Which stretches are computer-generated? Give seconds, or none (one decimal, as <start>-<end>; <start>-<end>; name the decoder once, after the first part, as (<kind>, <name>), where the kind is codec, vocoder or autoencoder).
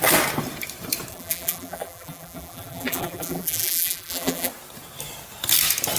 1.1-4.5 (vocoder, BigVGAN v2)